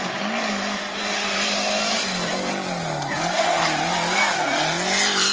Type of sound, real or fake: real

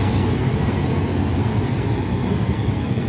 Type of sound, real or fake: fake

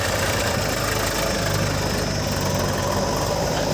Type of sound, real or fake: real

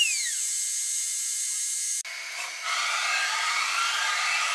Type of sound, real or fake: real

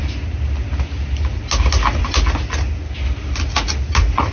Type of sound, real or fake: real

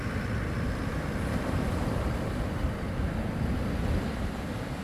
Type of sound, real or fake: real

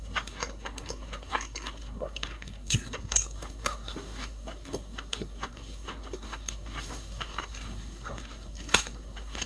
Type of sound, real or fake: fake